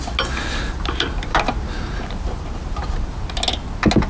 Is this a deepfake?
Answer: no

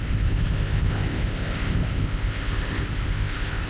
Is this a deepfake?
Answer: yes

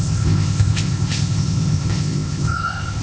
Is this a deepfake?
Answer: yes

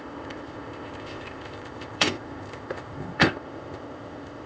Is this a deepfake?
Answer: yes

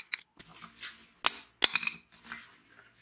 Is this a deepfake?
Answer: no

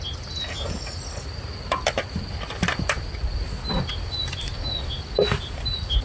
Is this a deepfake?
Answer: no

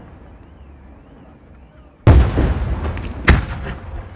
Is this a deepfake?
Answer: no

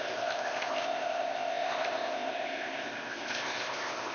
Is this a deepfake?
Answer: yes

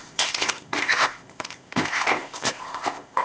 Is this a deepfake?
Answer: yes